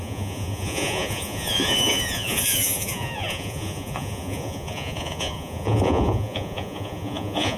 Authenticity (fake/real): fake